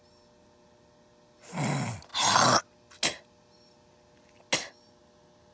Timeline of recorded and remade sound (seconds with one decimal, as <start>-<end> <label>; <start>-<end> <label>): 0.0-5.5 recorded